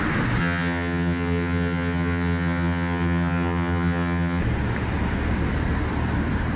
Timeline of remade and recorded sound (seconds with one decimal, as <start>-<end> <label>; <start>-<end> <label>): 0.0-0.4 recorded; 0.4-4.4 remade; 4.4-6.6 recorded